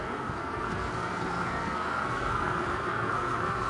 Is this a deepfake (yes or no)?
yes